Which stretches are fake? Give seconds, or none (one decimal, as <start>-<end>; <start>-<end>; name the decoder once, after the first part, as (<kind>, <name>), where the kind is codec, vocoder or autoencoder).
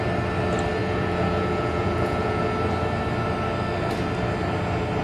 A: 0.8-2.4 (vocoder, Vocos)